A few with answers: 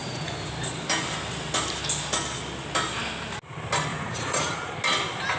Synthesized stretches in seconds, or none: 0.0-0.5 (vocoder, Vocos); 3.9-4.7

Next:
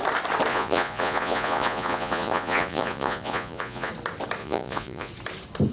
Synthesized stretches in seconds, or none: 0.5-3.9 (vocoder, Vocos); 4.4-5.1